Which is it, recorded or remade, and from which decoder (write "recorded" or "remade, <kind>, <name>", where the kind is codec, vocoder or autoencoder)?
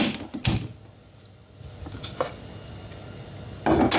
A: recorded